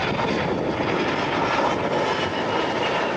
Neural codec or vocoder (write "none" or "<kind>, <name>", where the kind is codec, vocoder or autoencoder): none